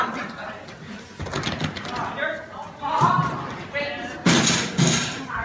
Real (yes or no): yes